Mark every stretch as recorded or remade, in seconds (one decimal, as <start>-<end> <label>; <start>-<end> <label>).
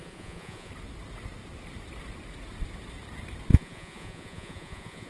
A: 0.0-0.7 remade; 0.7-3.5 recorded; 3.5-5.1 remade